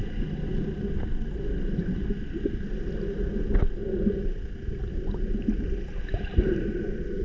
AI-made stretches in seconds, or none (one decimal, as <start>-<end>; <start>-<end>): none